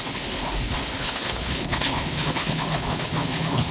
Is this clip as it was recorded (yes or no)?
no